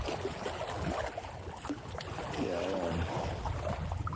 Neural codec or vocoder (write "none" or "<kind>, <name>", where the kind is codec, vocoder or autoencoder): none